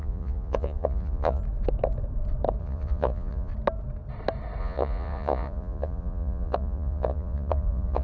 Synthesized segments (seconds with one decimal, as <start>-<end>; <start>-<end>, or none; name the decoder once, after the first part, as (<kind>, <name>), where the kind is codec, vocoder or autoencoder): 0.0-1.4 (vocoder, Vocos); 2.6-3.5; 4.6-8.0